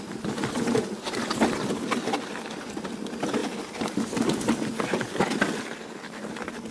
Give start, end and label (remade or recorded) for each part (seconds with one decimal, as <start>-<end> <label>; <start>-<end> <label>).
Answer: 0.0-6.7 recorded